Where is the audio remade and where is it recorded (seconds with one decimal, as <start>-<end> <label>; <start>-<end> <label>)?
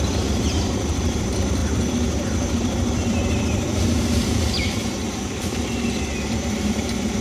0.0-7.2 remade